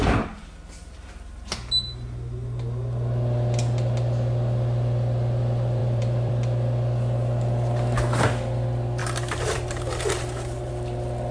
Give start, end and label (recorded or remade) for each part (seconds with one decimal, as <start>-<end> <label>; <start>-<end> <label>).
0.0-0.8 recorded; 0.8-1.4 remade; 1.4-5.8 recorded; 5.8-6.3 remade; 6.3-9.0 recorded; 9.0-10.7 remade; 10.7-11.3 recorded